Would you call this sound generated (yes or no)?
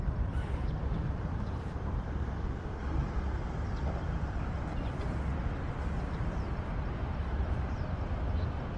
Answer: no